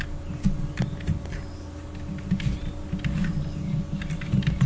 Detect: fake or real real